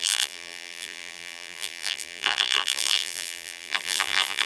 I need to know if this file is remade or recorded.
remade